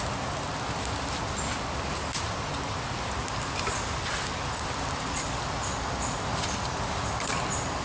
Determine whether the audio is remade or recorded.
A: recorded